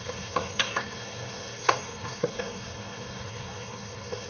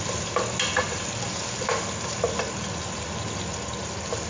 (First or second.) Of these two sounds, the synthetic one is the first